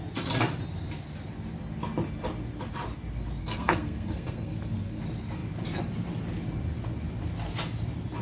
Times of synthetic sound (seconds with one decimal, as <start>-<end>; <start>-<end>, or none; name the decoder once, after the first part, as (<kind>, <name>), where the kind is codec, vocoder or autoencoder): 3.4-5.0 (codec, SNAC)